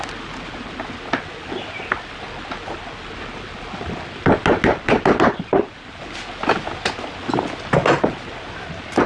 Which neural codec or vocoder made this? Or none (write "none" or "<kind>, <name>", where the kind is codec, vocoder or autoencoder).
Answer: none